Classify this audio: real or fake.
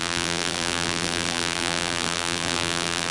fake